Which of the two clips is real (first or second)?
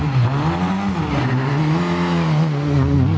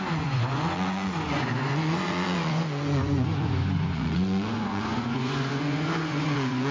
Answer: first